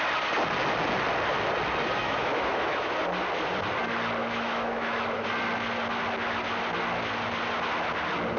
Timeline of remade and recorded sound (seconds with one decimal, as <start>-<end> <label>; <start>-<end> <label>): 0.0-2.0 recorded; 2.0-2.9 remade; 2.9-4.2 recorded; 4.2-5.3 remade; 5.3-8.4 recorded